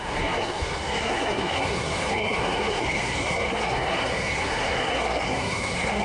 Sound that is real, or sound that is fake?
fake